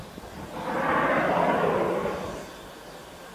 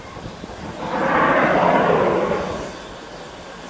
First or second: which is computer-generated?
second